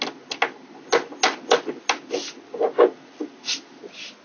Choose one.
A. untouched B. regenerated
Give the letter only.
A